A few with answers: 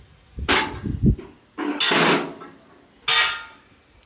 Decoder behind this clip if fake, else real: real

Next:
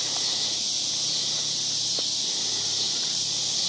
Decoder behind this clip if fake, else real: real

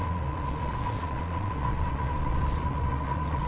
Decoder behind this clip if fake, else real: fake, vocoder, Vocos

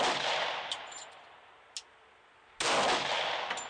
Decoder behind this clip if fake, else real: real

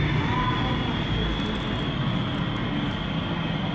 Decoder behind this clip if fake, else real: real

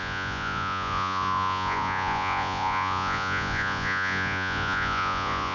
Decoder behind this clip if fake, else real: fake, vocoder, Vocos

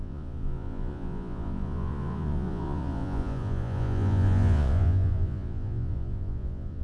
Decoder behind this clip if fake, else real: fake, vocoder, Vocos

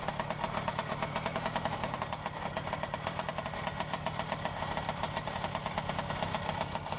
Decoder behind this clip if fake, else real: real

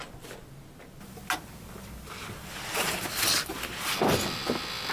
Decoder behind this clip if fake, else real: real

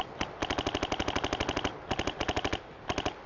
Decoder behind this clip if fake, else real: real